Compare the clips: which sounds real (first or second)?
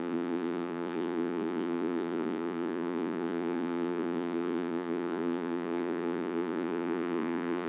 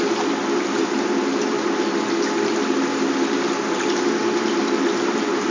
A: second